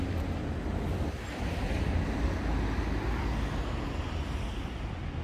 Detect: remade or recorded recorded